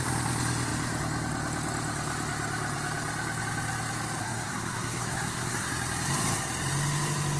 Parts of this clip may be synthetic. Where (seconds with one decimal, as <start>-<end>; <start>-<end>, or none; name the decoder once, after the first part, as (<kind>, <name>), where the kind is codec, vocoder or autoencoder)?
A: 4.2-5.7 (codec, SNAC)